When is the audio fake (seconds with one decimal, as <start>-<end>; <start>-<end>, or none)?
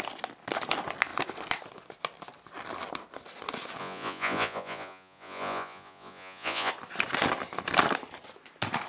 3.8-6.7